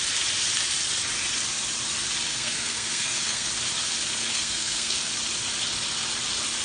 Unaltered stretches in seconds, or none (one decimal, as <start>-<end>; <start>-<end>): 0.0-2.3; 3.5-4.2; 5.1-6.6